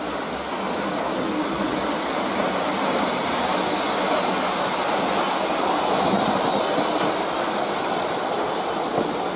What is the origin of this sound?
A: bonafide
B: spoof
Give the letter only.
A